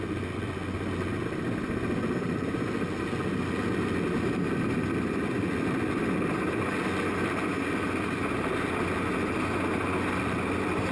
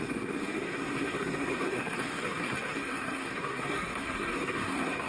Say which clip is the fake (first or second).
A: second